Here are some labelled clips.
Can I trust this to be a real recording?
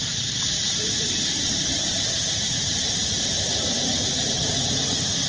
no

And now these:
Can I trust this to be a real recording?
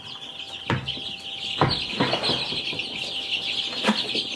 yes